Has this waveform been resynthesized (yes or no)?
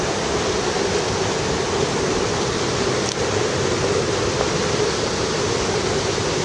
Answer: no